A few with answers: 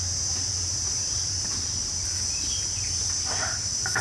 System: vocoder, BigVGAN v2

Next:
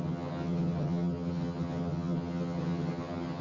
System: vocoder, HiFi-GAN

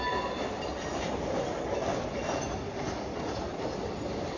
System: none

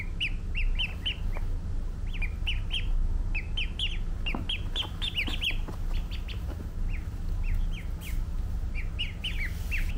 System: none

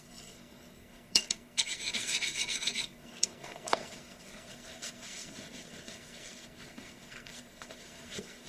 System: codec, SNAC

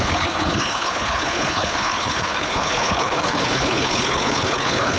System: codec, HILCodec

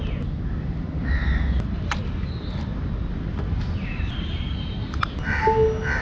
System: none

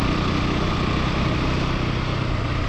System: none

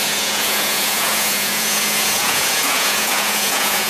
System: vocoder, Vocos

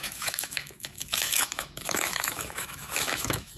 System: autoencoder, DAC-VAE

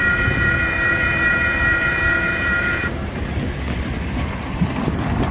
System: vocoder, BigVGAN v2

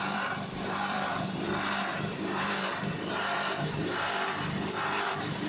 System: vocoder, BigVGAN v2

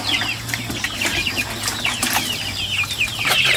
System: none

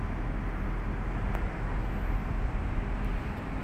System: none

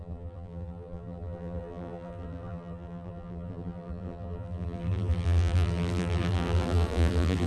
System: vocoder, BigVGAN v2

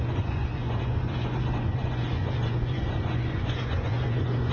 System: vocoder, Vocos